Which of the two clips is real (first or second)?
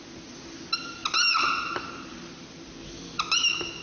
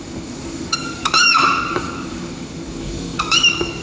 first